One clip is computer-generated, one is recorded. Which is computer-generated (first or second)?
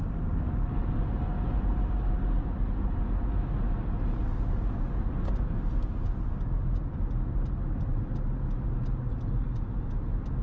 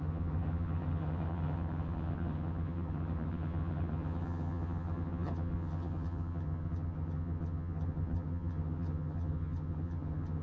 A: second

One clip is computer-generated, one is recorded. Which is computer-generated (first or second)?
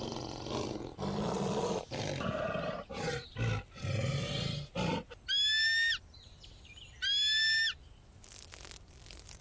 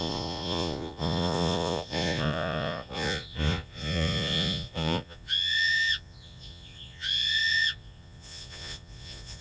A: second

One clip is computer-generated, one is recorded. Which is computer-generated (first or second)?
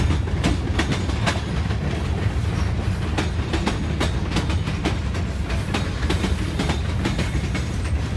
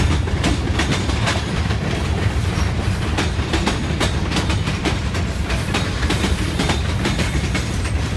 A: second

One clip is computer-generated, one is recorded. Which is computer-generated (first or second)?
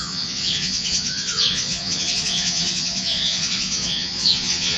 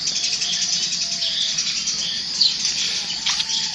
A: first